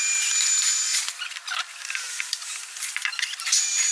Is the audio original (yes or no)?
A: no